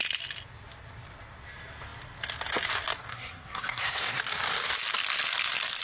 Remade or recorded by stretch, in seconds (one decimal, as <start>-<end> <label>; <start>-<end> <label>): 0.0-3.1 recorded; 3.1-4.2 remade; 4.2-5.8 recorded